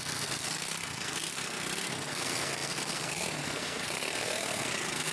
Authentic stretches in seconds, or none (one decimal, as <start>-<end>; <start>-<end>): none